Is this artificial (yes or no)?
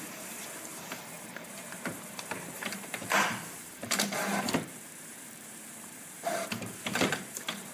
yes